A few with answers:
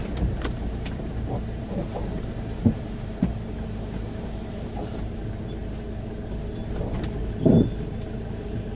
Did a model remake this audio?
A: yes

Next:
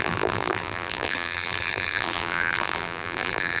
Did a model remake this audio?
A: yes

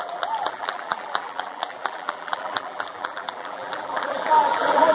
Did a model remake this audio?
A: yes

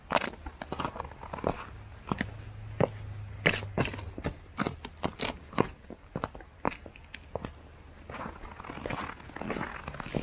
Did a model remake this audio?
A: no